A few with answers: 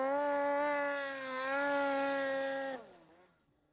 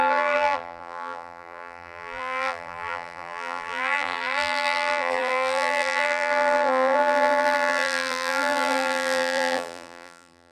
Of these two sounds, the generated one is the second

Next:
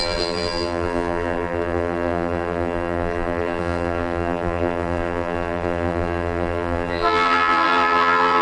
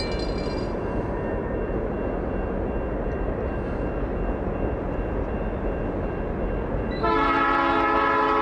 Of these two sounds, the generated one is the first